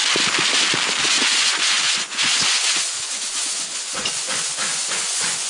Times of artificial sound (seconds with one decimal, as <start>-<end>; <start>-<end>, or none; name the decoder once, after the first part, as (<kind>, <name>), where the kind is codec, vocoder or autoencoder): 1.0-5.5 (vocoder, Vocos)